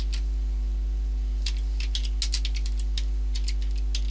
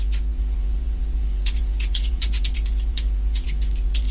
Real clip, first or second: first